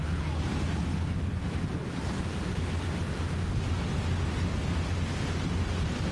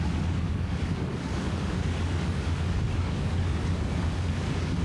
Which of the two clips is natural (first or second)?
first